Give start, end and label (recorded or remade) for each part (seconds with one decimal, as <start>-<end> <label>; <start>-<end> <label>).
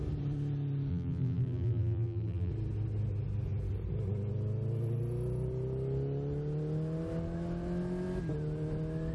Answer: 0.0-0.9 recorded; 0.9-2.5 remade; 2.5-9.1 recorded